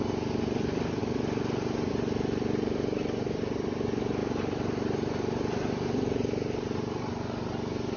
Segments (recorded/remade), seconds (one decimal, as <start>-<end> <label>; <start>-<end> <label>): 0.0-8.0 recorded